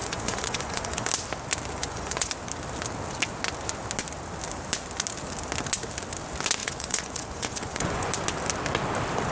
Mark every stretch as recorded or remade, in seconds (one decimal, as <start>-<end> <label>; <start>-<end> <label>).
0.0-1.1 remade; 1.1-1.8 recorded; 1.8-2.3 remade; 2.3-6.6 recorded; 6.6-8.1 remade; 8.1-9.3 recorded